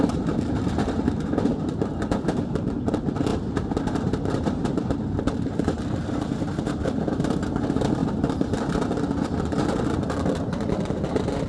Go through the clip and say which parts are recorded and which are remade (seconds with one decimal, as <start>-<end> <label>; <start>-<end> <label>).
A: 0.0-1.5 remade; 1.5-2.8 recorded; 2.8-8.0 remade; 8.0-11.5 recorded